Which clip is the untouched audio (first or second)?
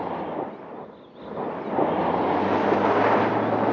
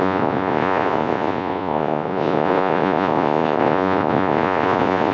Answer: first